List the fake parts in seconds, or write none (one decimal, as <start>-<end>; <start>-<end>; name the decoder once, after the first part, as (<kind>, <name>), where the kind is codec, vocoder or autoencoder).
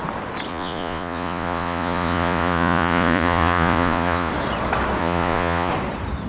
0.5-4.3 (vocoder, Vocos); 5.0-5.7